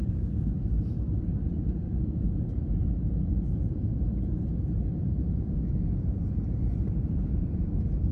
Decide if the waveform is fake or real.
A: fake